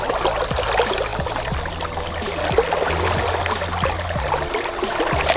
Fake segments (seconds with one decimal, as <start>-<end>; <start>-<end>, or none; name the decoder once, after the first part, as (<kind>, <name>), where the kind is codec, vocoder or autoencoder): none